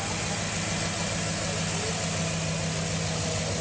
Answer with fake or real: real